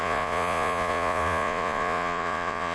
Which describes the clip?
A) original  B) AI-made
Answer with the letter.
B